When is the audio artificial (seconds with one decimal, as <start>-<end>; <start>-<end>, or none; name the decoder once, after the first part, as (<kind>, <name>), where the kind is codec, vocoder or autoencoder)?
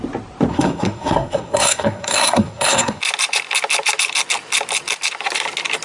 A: 0.5-3.0 (codec, SNAC)